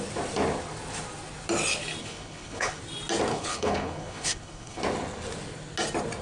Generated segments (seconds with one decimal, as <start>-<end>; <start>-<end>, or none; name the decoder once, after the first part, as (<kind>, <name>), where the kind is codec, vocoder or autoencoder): 2.0-2.8 (codec, HILCodec); 3.3-4.8